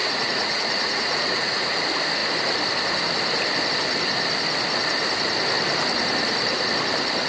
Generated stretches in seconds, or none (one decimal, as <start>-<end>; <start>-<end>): 0.0-1.8